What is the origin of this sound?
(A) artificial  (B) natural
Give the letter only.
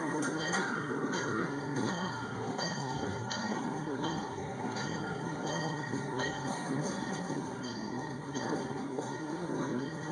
A